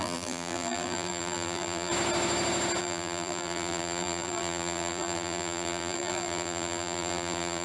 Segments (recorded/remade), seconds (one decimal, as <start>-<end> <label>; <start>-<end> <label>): 0.0-1.9 remade; 1.9-2.8 recorded; 2.8-7.6 remade